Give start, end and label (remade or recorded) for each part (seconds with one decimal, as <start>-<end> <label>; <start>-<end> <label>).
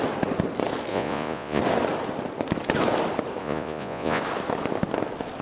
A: 0.0-0.9 recorded; 0.9-1.6 remade; 1.6-3.4 recorded; 3.4-4.2 remade; 4.2-5.4 recorded